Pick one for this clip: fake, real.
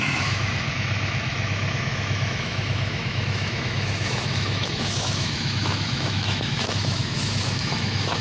fake